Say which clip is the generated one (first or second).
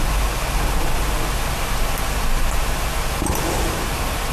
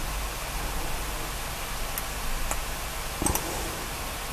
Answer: first